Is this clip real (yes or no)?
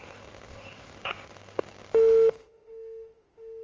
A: no